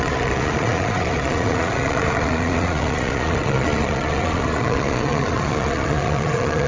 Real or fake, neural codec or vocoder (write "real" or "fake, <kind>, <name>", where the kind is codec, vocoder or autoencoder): fake, vocoder, Vocos